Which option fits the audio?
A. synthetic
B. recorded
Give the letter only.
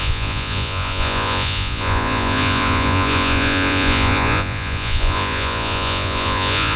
A